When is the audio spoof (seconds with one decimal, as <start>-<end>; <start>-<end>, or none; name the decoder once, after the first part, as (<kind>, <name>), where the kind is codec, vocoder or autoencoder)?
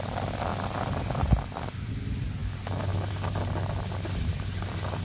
none